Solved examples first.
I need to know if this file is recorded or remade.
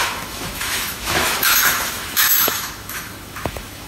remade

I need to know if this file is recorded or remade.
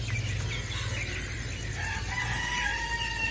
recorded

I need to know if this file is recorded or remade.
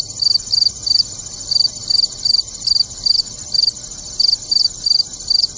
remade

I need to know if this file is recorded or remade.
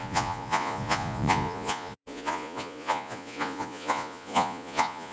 remade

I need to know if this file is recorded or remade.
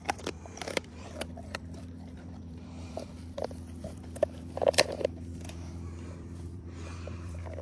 remade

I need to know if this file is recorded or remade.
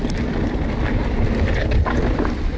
recorded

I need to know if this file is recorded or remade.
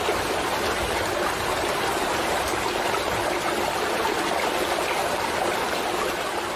recorded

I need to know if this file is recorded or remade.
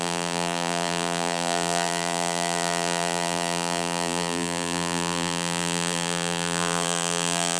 remade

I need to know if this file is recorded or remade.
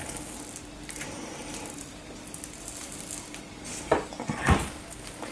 recorded